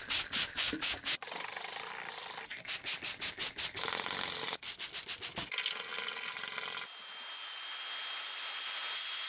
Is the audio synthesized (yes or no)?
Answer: no